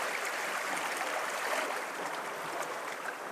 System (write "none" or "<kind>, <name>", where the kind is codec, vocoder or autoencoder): none